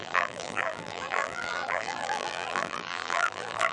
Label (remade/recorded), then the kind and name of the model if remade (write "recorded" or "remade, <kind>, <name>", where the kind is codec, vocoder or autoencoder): remade, vocoder, BigVGAN v2